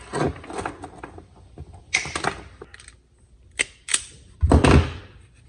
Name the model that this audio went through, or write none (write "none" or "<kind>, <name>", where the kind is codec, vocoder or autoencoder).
none